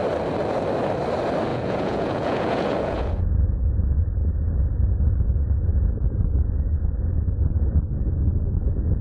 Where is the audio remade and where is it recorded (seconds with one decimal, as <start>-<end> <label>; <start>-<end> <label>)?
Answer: 0.0-1.5 recorded; 1.5-3.8 remade; 3.8-9.0 recorded